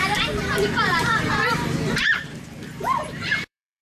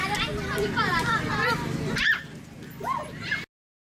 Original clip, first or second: second